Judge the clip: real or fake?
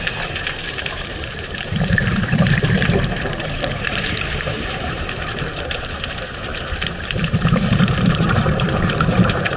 fake